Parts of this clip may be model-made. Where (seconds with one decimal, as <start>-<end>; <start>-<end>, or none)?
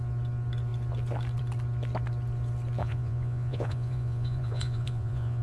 2.8-5.4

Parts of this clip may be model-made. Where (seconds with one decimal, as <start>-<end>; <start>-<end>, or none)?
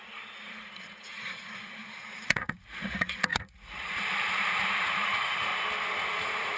0.0-5.5; 6.0-6.6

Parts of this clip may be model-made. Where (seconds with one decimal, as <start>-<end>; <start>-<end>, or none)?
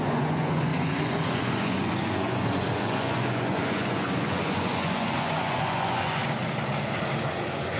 0.0-6.2; 7.2-7.8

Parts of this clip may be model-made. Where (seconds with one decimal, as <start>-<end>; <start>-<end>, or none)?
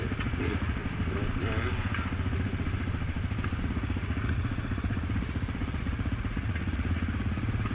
0.0-0.8; 3.6-7.7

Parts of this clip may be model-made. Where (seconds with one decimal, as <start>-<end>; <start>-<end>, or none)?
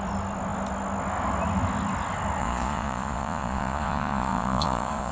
2.4-5.1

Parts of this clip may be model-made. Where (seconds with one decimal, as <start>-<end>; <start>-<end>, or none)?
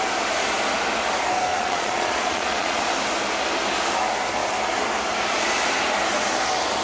1.5-2.8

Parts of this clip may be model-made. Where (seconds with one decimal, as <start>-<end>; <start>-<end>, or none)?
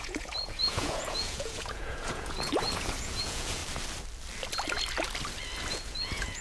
0.0-3.6; 5.7-6.4